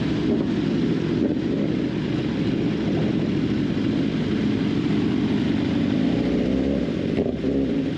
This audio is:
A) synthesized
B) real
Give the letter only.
A